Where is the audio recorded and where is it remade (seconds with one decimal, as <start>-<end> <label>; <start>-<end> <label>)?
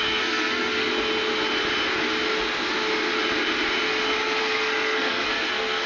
0.0-0.9 remade; 0.9-4.4 recorded; 4.4-5.9 remade